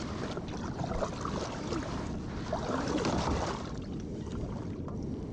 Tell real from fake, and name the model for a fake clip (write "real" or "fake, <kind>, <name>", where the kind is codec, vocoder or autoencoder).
real